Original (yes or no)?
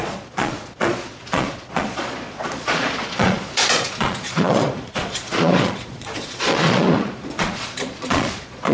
no